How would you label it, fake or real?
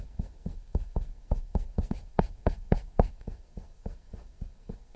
fake